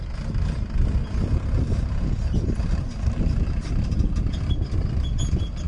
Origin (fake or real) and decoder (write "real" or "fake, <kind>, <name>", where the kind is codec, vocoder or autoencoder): real